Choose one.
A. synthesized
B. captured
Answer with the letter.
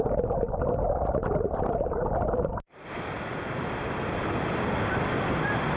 B